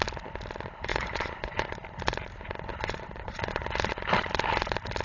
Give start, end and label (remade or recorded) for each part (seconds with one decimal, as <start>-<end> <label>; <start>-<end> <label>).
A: 0.0-0.9 recorded; 0.9-1.7 remade; 1.7-2.7 recorded; 2.7-3.5 remade; 3.5-5.0 recorded